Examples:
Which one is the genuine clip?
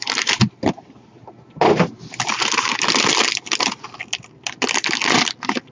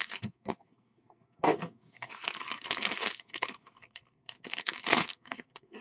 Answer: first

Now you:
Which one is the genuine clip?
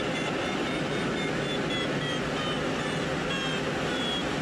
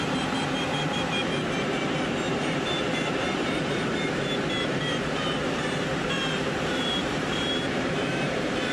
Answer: first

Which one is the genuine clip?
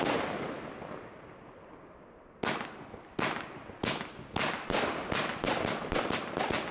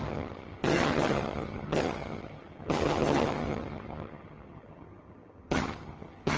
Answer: first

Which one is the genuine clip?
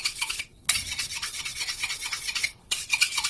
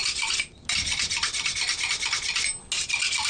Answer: second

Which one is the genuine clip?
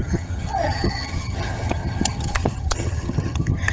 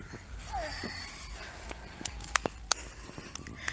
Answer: second